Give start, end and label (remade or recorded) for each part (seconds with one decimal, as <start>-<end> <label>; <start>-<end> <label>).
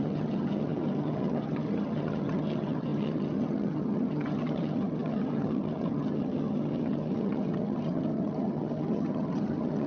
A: 0.0-9.9 remade